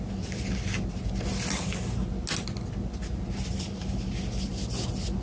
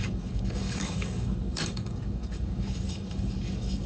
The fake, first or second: second